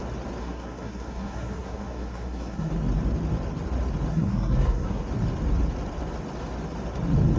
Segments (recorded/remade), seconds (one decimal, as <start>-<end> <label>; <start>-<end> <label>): 0.0-0.4 recorded; 0.4-2.7 remade; 2.7-4.1 recorded; 4.1-5.0 remade; 5.0-7.4 recorded